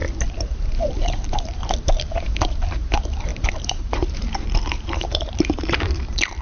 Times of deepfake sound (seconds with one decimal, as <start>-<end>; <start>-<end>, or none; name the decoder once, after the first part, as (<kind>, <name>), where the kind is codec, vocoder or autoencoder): 0.0-6.4 (vocoder, BigVGAN v2)